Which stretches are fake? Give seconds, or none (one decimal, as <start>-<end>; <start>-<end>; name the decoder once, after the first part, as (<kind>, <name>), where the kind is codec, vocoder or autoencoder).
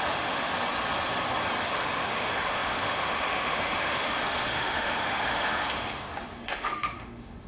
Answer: 0.0-0.5 (autoencoder, DAC-VAE); 1.6-7.5